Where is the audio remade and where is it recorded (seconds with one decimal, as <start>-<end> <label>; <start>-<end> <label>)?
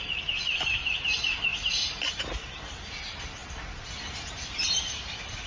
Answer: 0.0-5.5 remade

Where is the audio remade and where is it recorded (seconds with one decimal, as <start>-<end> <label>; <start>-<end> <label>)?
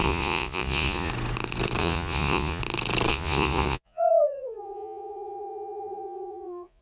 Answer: 0.0-1.1 remade; 1.1-1.8 recorded; 1.8-2.6 remade; 2.6-3.1 recorded; 3.1-6.8 remade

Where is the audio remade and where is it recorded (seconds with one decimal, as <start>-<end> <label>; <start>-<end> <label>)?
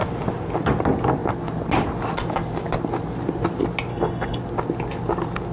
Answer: 0.0-3.9 recorded; 3.9-4.4 remade; 4.4-5.5 recorded